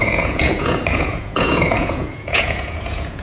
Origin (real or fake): fake